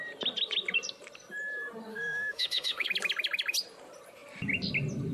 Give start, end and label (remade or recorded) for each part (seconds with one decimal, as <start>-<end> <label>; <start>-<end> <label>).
0.0-1.9 recorded; 1.9-2.9 remade; 2.9-5.1 recorded

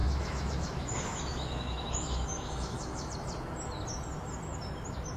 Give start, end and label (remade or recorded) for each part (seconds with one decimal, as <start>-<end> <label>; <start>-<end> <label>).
0.0-3.1 remade; 3.1-5.2 recorded